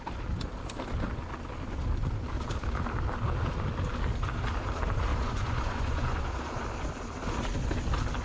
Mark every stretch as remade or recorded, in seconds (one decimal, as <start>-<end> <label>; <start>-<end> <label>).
0.0-5.1 recorded; 5.1-6.2 remade; 6.2-8.2 recorded